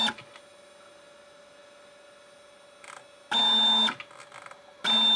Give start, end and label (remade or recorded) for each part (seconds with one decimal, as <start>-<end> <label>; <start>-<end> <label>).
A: 0.0-5.2 recorded

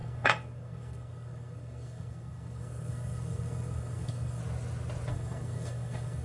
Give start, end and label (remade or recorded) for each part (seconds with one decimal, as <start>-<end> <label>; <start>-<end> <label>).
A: 0.0-4.4 remade; 4.4-5.1 recorded; 5.1-6.2 remade

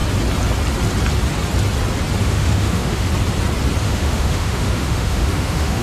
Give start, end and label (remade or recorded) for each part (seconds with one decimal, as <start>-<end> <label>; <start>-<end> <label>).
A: 0.0-2.2 recorded; 2.2-3.1 remade; 3.1-3.8 recorded; 3.8-5.8 remade